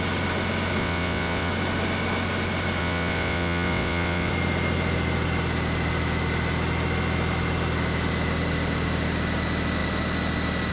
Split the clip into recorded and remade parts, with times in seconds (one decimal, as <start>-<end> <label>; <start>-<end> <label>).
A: 0.0-0.8 recorded; 0.8-1.5 remade; 1.5-2.8 recorded; 2.8-4.3 remade; 4.3-10.7 recorded